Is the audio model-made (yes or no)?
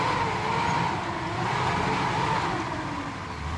no